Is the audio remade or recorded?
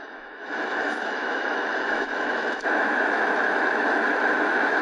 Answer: remade